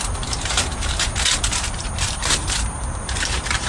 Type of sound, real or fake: fake